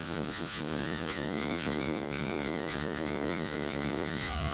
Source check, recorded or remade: remade